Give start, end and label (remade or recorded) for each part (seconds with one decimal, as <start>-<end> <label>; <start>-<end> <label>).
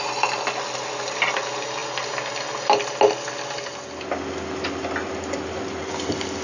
0.0-6.4 recorded